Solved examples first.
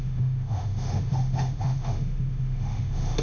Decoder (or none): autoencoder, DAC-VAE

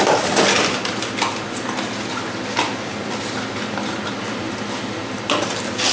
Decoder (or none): none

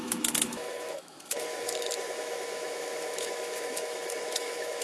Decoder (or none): autoencoder, DAC-VAE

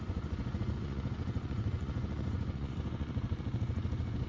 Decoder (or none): vocoder, Vocos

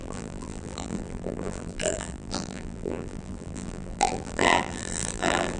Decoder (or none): vocoder, BigVGAN v2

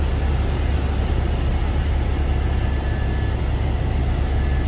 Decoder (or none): none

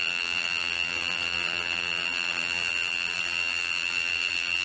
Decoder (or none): vocoder, BigVGAN v2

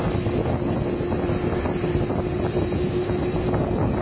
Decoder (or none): none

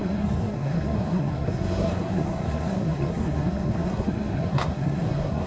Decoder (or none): codec, SNAC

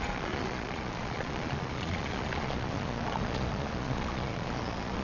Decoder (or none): vocoder, Vocos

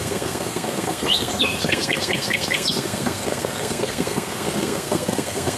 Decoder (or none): codec, SNAC